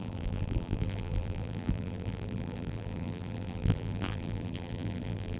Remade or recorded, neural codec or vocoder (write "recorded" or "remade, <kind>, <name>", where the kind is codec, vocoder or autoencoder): remade, vocoder, BigVGAN v2